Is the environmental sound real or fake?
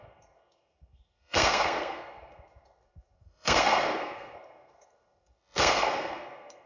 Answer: fake